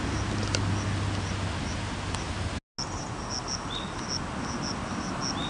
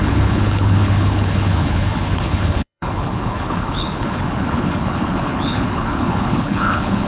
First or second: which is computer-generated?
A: second